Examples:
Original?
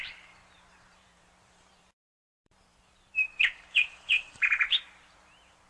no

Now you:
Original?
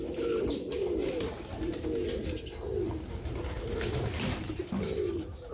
yes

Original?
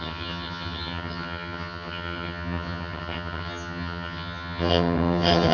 no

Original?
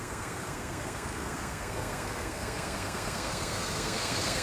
no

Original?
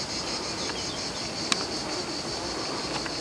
yes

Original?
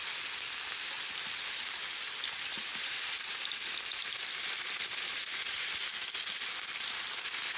no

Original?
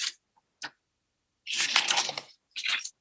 yes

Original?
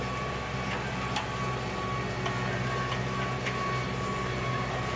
yes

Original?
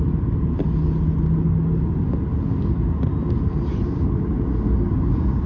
yes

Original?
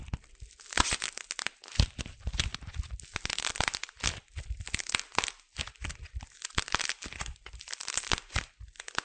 yes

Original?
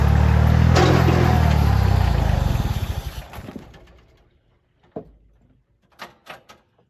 yes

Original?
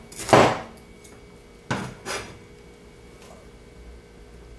yes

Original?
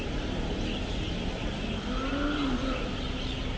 yes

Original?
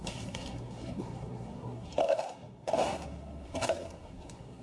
no